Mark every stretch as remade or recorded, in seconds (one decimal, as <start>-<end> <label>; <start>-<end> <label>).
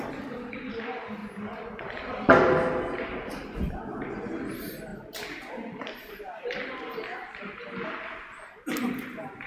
0.0-9.5 recorded